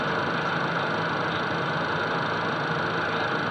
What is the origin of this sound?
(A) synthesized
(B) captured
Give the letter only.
B